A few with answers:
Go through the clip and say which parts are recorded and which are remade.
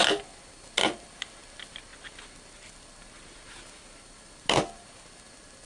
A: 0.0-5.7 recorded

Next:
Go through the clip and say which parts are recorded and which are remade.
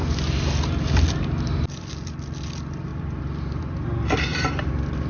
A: 0.0-2.9 recorded; 2.9-3.6 remade; 3.6-4.3 recorded; 4.3-5.1 remade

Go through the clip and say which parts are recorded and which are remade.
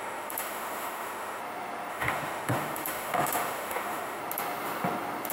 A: 0.0-1.4 remade; 1.4-1.9 recorded; 1.9-4.2 remade; 4.2-5.3 recorded